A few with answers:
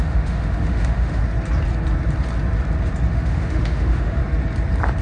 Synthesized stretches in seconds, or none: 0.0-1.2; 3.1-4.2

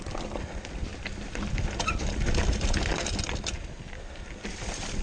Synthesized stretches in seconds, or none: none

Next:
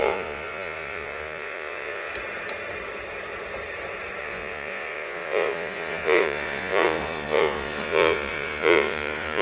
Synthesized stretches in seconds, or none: 0.0-2.1; 4.2-9.4